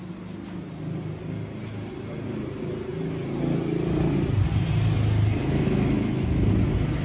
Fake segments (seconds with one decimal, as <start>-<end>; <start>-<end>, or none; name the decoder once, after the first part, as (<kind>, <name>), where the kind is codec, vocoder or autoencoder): 5.4-6.5 (autoencoder, DAC-VAE)